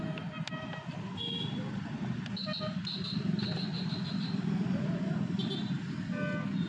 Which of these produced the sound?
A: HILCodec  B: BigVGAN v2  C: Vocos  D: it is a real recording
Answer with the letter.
D